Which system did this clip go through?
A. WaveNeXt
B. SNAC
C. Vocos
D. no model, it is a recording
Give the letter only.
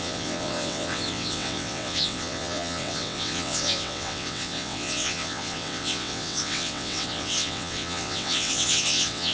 A